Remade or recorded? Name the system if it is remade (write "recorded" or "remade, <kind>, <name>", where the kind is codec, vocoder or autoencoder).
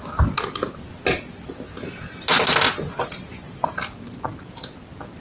recorded